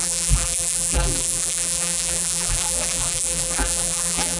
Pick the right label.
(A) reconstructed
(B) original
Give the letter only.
A